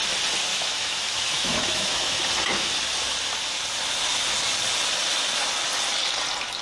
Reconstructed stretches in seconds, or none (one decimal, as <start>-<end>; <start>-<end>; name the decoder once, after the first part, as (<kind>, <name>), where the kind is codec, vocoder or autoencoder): 0.5-2.2 (autoencoder, DAC-VAE)

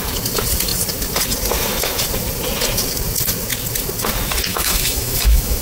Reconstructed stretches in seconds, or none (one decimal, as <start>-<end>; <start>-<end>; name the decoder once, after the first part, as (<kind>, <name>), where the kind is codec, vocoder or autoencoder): 4.5-5.6 (autoencoder, DAC-VAE)

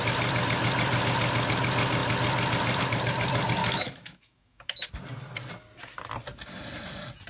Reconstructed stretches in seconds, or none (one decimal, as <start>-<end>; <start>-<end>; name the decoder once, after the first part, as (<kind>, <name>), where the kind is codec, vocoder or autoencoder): 3.6-4.9 (autoencoder, DAC-VAE)